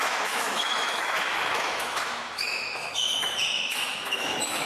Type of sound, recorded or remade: remade